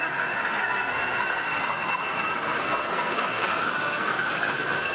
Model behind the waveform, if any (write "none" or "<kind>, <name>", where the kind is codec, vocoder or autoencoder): codec, SNAC